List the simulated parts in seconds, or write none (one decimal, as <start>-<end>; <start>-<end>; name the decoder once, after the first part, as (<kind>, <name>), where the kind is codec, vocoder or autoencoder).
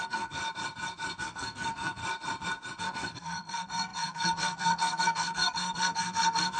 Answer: 0.0-0.4 (codec, SNAC); 1.2-2.0; 2.8-6.6